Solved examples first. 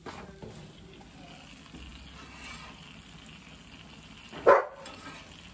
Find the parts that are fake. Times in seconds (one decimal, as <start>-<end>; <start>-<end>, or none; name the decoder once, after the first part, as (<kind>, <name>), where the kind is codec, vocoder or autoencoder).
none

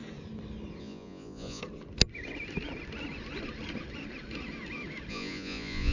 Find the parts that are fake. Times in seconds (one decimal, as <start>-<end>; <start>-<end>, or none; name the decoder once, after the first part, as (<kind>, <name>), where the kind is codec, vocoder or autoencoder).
0.8-1.6 (vocoder, Vocos); 5.1-5.9

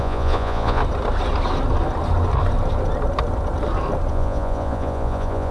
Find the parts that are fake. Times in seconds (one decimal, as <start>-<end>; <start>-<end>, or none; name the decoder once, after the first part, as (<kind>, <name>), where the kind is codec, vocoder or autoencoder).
0.0-0.8 (vocoder, Vocos); 4.1-5.5